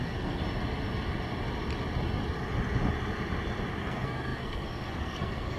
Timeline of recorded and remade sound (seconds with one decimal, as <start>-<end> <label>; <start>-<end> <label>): 0.0-0.4 remade; 0.4-3.8 recorded; 3.8-5.6 remade